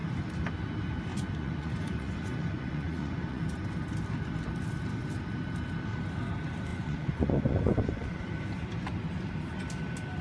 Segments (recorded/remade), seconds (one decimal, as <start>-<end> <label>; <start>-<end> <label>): 0.0-1.1 recorded; 1.1-3.4 remade; 3.4-6.7 recorded; 6.7-8.2 remade; 8.2-10.2 recorded